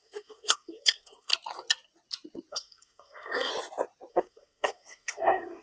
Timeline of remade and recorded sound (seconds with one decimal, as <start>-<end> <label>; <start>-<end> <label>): 0.0-1.3 remade; 1.3-2.5 recorded; 2.5-3.5 remade; 3.5-4.1 recorded; 4.1-5.6 remade